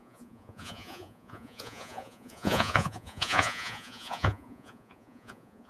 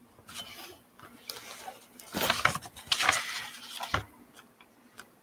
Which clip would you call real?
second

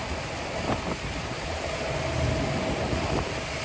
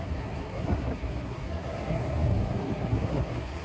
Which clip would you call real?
first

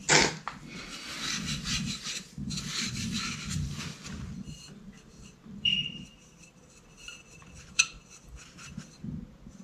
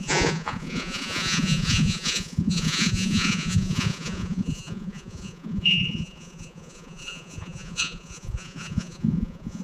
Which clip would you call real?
first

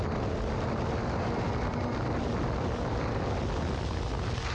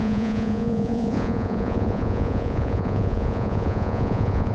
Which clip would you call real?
first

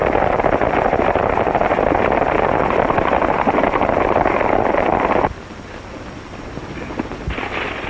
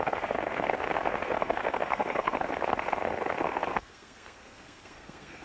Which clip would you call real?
first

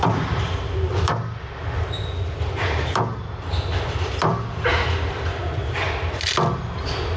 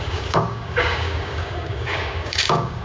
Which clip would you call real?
first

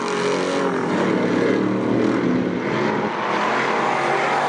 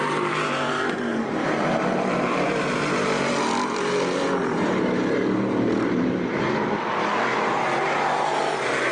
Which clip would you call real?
first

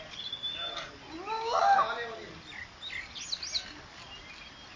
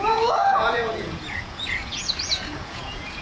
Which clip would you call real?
first